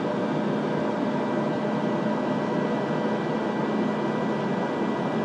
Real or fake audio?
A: real